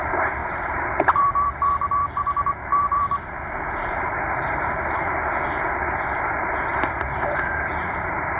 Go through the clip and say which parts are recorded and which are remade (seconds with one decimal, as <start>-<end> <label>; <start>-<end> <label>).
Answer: 0.0-6.7 remade; 6.7-7.4 recorded; 7.4-8.4 remade